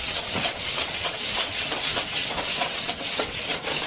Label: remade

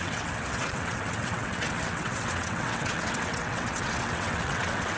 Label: remade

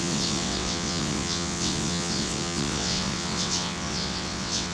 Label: remade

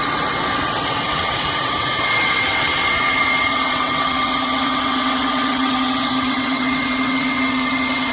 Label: remade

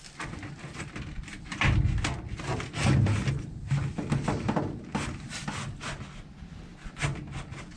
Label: recorded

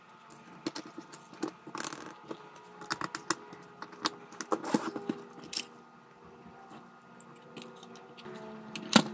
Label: recorded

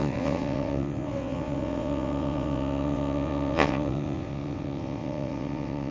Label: remade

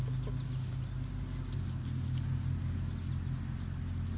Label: recorded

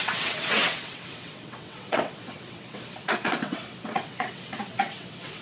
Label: remade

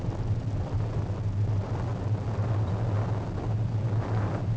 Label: recorded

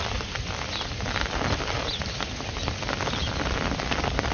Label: recorded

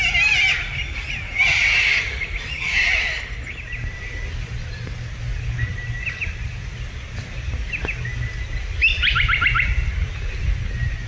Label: recorded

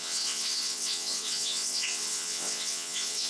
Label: remade